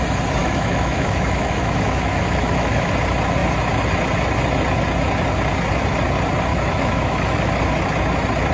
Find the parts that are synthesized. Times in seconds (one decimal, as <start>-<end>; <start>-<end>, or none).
0.4-2.9; 6.5-7.5